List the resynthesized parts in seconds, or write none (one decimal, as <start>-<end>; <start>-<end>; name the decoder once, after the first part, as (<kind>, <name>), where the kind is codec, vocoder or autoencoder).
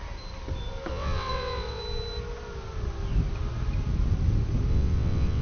0.9-1.8 (vocoder, WaveNeXt); 4.7-5.4